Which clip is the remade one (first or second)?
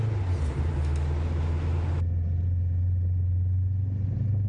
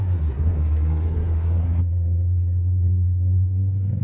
second